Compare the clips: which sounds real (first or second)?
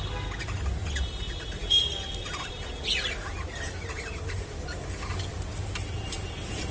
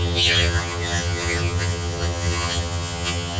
first